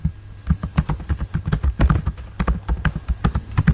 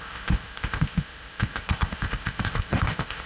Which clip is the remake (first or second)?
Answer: second